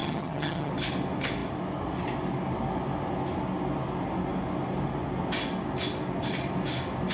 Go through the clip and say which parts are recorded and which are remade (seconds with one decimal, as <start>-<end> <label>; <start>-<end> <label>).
0.0-0.7 remade; 0.7-7.1 recorded